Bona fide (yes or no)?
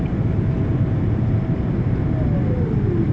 yes